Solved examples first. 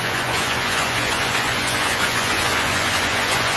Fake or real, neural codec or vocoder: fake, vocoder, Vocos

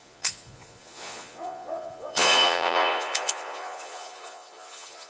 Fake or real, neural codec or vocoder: fake, vocoder, Vocos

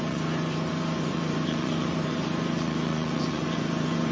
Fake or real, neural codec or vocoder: fake, vocoder, Vocos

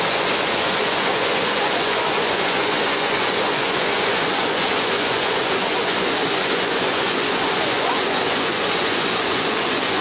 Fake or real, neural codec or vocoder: fake, vocoder, Vocos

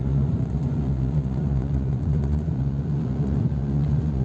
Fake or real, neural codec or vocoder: fake, vocoder, Vocos